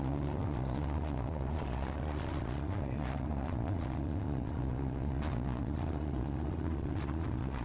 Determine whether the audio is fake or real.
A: fake